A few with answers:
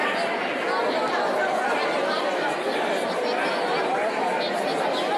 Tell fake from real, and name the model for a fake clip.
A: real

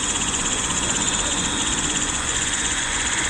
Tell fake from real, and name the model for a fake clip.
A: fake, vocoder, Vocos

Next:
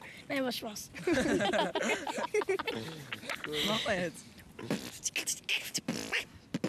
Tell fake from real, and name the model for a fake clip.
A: real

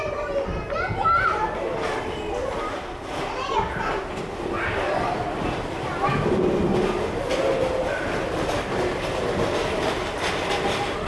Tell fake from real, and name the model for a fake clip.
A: real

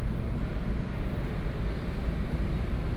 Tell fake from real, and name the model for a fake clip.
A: real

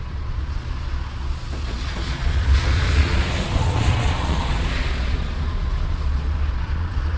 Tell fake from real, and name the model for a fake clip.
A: fake, vocoder, Vocos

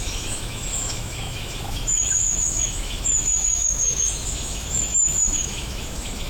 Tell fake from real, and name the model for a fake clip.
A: fake, autoencoder, DAC-VAE